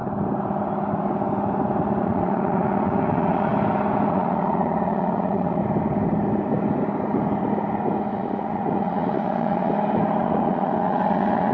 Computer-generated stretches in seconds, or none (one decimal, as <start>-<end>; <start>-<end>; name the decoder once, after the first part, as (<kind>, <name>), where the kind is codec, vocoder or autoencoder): 2.0-3.5 (vocoder, Vocos); 4.1-5.6; 8.1-9.7; 10.2-11.5